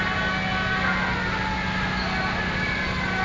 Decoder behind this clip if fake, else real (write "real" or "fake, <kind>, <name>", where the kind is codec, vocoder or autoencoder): real